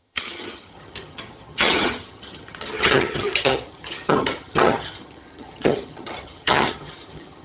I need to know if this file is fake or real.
fake